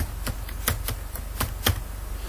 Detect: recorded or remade recorded